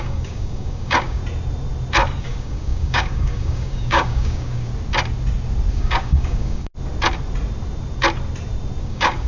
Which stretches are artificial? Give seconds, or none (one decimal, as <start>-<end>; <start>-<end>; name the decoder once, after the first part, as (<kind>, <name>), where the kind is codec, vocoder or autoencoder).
0.0-1.2 (codec, DAC); 2.2-4.7; 5.7-6.7; 8.8-9.3

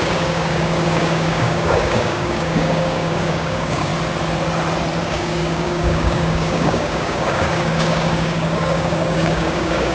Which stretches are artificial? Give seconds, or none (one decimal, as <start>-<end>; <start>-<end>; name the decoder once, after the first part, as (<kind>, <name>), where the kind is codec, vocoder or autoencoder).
0.0-3.9 (codec, DAC); 5.0-9.9

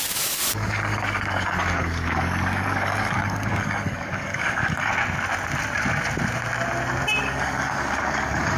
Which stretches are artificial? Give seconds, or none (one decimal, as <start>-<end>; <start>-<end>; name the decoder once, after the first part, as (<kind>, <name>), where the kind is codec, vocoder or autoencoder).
0.0-4.9 (codec, DAC); 7.2-8.6

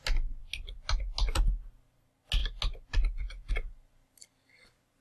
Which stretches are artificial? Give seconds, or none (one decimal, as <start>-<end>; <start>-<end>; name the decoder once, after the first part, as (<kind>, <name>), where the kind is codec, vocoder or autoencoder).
none

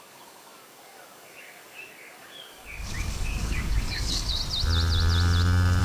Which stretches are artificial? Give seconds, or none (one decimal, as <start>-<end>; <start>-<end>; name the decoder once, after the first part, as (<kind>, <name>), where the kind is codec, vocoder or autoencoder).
0.0-4.4 (codec, DAC)

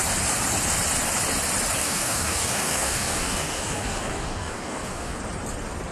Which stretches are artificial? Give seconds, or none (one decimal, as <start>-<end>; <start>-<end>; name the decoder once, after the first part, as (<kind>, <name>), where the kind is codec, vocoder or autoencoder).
1.8-5.2 (codec, DAC)

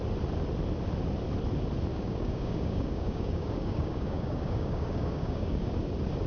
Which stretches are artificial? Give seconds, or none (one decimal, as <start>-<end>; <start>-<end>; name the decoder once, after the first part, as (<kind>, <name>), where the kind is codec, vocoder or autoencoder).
1.9-5.7 (codec, DAC)